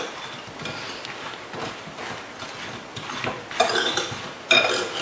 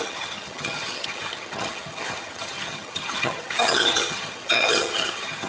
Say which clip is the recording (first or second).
first